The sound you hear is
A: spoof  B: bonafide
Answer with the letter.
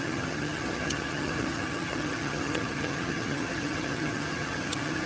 A